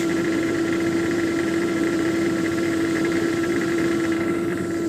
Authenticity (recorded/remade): remade